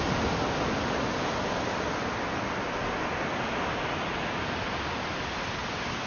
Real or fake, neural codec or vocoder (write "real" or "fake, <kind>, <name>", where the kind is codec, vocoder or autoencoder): real